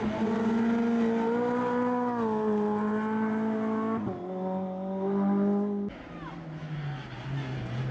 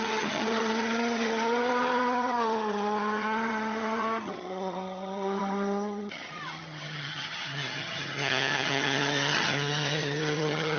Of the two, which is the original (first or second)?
first